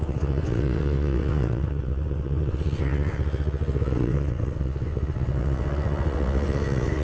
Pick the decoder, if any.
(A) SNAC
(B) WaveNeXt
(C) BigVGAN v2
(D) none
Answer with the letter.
B